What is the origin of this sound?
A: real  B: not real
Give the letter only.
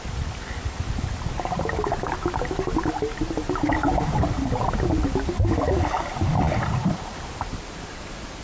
A